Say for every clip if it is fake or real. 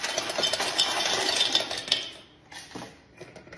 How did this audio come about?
real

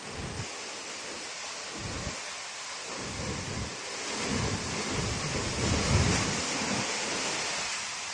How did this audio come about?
real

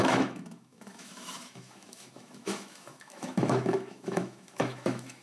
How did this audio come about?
fake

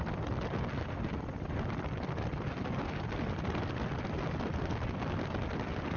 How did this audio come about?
real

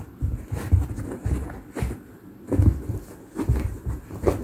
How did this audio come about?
real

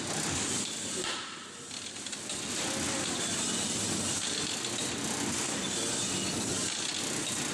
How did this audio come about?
real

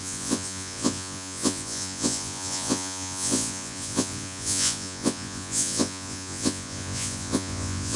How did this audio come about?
fake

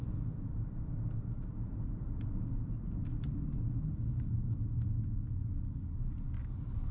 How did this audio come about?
real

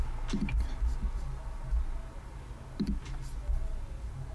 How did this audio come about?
real